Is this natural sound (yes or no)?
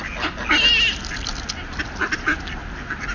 yes